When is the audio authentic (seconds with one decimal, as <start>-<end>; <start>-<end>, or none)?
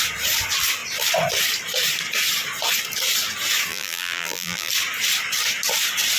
0.0-3.7; 4.7-6.2